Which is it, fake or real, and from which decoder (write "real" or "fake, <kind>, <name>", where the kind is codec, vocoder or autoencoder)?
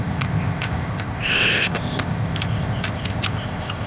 fake, codec, ZipCodec